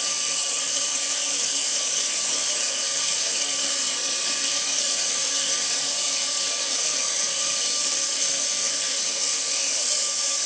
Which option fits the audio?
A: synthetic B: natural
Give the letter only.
A